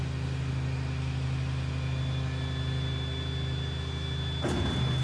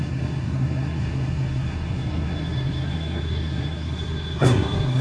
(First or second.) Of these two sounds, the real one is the first